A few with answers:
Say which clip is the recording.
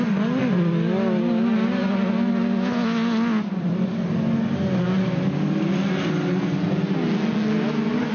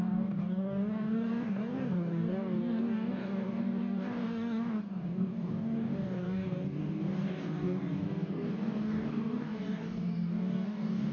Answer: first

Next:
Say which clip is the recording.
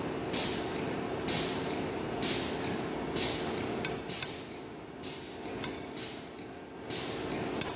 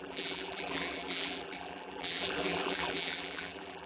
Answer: first